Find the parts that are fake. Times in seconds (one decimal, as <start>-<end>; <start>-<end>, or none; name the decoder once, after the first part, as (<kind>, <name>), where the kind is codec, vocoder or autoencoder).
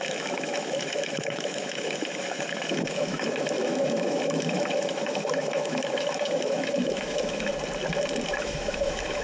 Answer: 0.0-7.5 (autoencoder, DAC-VAE); 8.4-9.2